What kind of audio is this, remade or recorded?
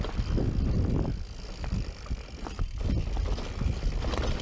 recorded